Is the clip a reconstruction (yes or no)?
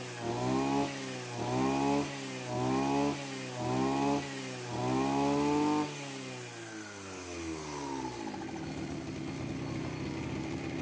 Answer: no